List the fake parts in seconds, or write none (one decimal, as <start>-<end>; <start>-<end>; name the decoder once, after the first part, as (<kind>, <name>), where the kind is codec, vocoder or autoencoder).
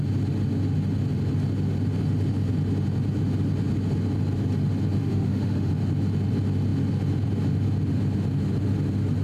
5.0-5.7 (autoencoder, DAC-VAE)